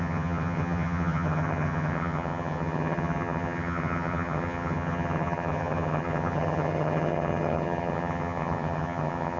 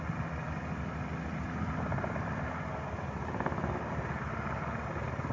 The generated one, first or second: first